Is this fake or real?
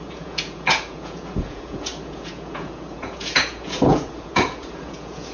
fake